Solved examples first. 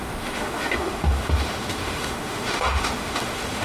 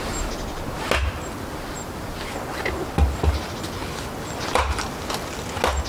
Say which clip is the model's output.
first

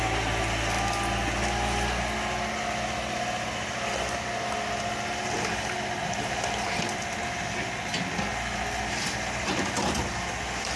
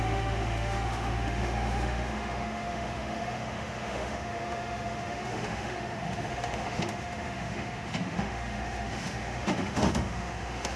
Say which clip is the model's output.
second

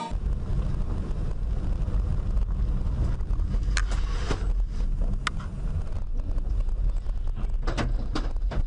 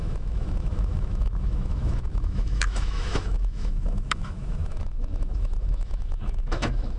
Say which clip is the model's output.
second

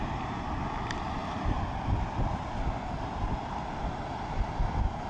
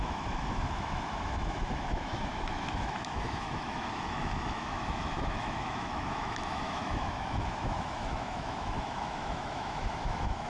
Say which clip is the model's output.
second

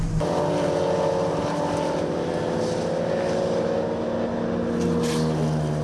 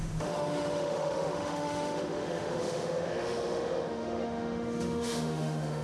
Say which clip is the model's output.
second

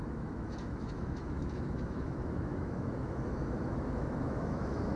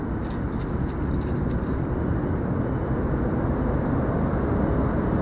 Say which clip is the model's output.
first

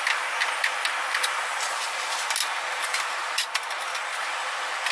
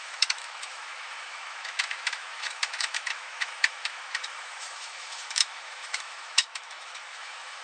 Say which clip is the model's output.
second